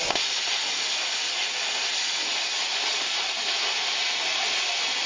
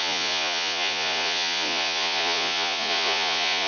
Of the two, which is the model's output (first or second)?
second